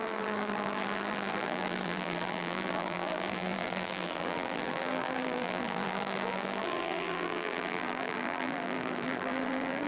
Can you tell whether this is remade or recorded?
remade